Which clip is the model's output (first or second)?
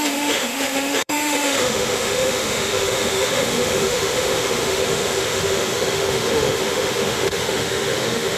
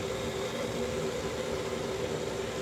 first